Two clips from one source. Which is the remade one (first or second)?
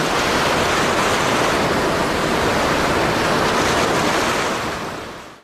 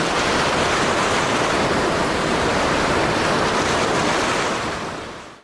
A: second